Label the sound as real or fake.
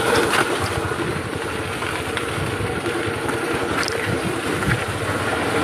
real